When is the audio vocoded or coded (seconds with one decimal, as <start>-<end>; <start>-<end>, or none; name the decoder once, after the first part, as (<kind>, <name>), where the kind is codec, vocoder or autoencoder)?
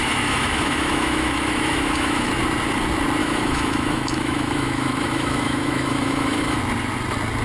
0.0-2.3 (autoencoder, DAC-VAE); 3.2-6.6